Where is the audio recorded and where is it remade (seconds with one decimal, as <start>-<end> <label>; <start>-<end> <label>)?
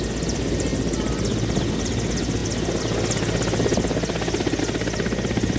0.0-5.6 recorded